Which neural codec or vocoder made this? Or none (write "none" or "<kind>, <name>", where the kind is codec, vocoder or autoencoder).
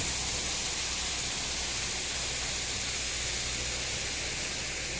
none